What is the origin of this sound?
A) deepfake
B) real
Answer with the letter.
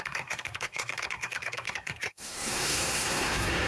A